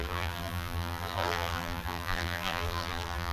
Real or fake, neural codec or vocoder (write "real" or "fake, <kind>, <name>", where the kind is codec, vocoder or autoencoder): fake, vocoder, BigVGAN v2